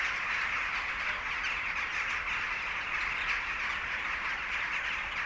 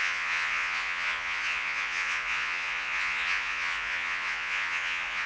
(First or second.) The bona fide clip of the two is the first